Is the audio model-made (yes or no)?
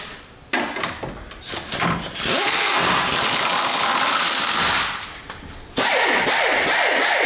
no